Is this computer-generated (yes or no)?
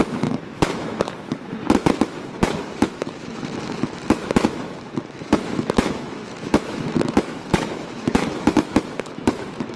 yes